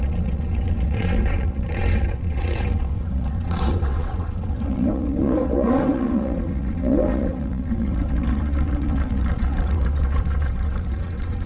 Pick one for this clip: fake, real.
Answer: fake